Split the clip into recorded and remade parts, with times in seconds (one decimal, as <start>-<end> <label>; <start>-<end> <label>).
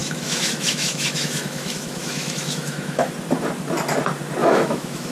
0.0-3.1 remade; 3.1-4.4 recorded; 4.4-5.1 remade